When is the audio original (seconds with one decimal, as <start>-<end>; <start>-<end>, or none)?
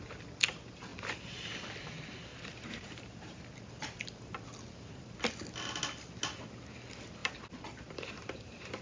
0.0-2.3; 3.4-7.2